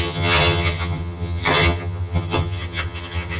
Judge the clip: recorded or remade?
remade